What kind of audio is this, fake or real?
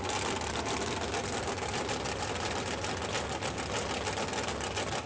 real